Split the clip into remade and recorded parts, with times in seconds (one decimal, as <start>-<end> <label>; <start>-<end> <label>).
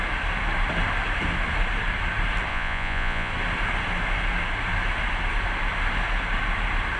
0.0-2.5 recorded; 2.5-3.3 remade; 3.3-7.0 recorded